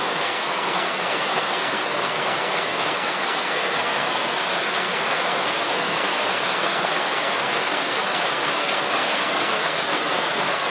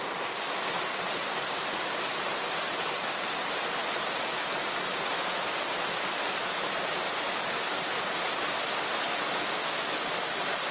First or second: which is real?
second